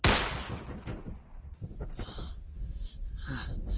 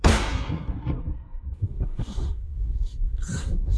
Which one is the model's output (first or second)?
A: second